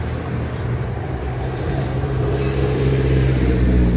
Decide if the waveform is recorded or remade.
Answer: remade